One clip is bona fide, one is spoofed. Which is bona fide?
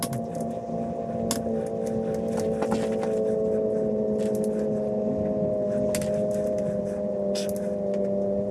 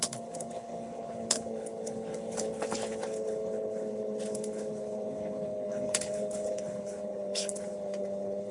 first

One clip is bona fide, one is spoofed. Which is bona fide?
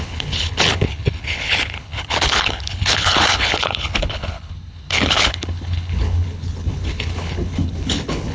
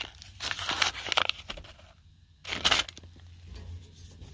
second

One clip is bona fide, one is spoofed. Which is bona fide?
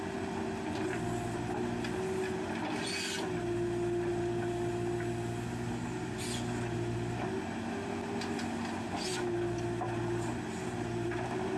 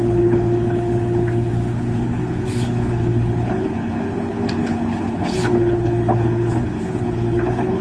first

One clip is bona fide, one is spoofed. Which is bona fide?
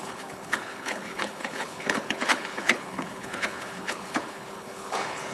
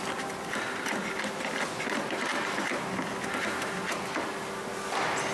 second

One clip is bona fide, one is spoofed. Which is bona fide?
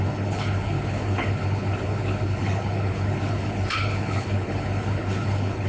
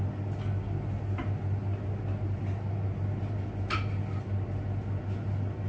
second